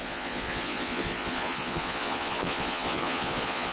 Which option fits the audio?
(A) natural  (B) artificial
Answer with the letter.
B